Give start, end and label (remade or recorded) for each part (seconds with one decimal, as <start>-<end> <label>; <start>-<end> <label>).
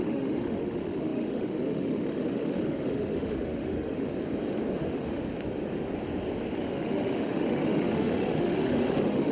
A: 0.0-4.1 remade; 4.1-4.8 recorded; 4.8-5.2 remade; 5.2-6.5 recorded; 6.5-9.3 remade